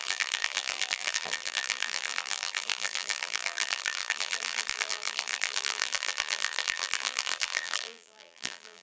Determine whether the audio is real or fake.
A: fake